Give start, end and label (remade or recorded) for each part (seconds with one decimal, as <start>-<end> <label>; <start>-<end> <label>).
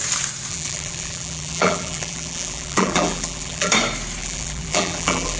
0.0-0.5 recorded; 0.5-3.7 remade; 3.7-4.2 recorded; 4.2-5.4 remade